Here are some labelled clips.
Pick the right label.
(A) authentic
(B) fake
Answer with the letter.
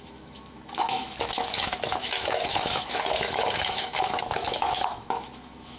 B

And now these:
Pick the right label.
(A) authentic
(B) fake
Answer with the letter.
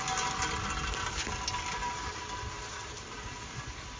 A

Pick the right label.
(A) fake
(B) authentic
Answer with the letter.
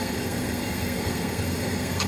A